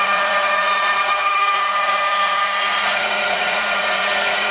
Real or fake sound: fake